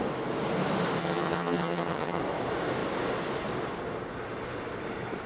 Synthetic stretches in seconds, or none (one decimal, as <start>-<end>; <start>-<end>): 1.0-2.2